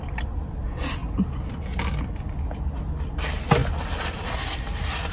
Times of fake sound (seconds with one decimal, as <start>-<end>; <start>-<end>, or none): none